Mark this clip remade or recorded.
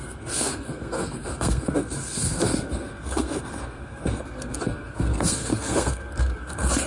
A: remade